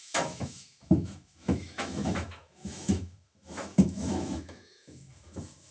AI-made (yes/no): yes